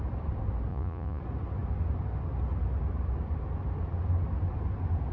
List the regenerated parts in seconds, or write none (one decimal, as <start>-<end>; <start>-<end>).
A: 0.7-1.2